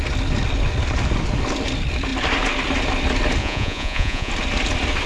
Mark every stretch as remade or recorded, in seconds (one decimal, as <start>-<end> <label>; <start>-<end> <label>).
0.0-3.4 recorded; 3.4-4.3 remade; 4.3-5.1 recorded